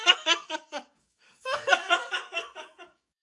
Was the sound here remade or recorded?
remade